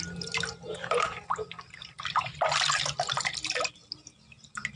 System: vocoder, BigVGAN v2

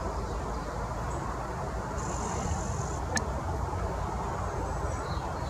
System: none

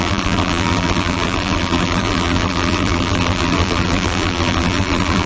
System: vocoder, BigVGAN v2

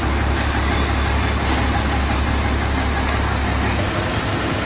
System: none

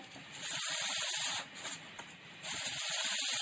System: none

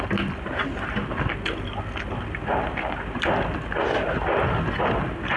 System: none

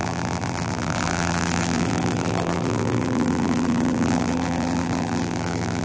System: vocoder, BigVGAN v2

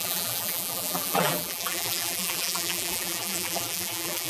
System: vocoder, BigVGAN v2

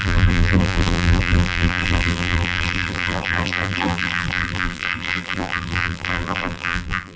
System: vocoder, BigVGAN v2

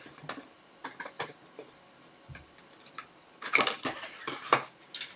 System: none